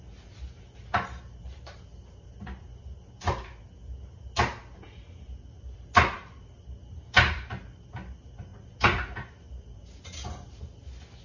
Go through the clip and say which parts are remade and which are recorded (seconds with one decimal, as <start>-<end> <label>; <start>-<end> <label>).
0.0-11.2 recorded